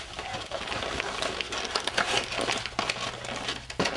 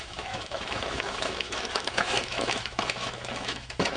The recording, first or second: first